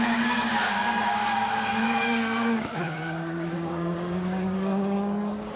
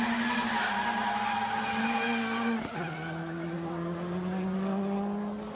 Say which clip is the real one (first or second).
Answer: second